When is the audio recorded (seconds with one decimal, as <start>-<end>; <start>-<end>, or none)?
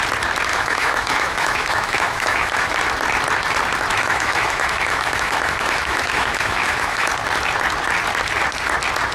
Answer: 0.0-0.5; 2.7-3.9; 7.1-9.1